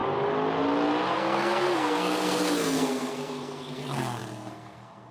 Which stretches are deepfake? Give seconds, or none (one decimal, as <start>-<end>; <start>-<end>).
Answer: 1.1-5.1